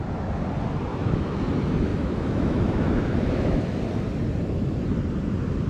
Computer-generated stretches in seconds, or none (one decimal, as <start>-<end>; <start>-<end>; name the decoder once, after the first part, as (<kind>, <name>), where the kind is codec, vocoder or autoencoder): 0.9-1.4 (autoencoder, DAC-VAE); 1.9-3.6

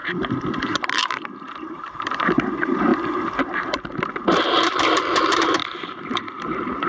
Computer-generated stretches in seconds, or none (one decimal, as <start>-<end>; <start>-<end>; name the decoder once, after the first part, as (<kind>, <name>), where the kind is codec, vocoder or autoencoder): 1.0-2.9 (vocoder, BigVGAN v2); 4.1-5.6; 6.3-6.9

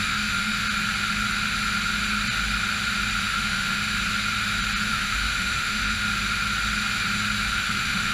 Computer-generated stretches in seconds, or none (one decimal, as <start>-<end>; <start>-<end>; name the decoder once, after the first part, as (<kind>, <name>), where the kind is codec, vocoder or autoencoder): 0.0-0.6 (autoencoder, DAC-VAE); 3.2-3.8; 4.9-6.0; 7.5-8.1

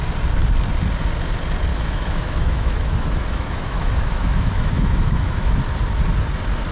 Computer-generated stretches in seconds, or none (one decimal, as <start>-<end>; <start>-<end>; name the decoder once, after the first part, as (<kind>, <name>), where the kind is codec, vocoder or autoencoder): 1.7-5.6 (autoencoder, DAC-VAE)

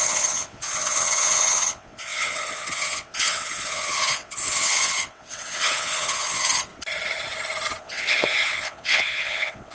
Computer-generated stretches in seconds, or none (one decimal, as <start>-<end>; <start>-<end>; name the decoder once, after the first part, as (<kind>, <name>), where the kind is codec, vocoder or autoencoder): 0.0-6.7 (vocoder, WaveNeXt); 7.8-9.7